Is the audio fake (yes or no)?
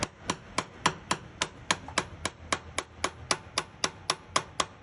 no